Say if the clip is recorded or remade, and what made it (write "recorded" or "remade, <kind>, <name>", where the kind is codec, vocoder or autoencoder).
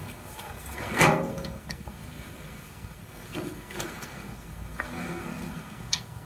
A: remade, codec, SNAC